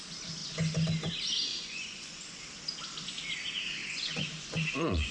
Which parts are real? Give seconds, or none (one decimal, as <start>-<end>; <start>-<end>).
0.0-1.5; 2.4-3.8